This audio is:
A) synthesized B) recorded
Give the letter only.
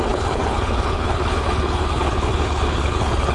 A